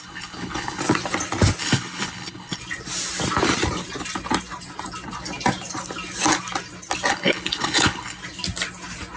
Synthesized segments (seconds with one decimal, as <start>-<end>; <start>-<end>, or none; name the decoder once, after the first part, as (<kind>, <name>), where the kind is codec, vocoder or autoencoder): 0.0-0.8 (codec, HILCodec); 1.6-2.6; 7.1-8.2